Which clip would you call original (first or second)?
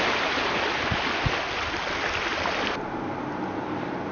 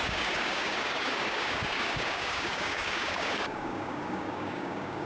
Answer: first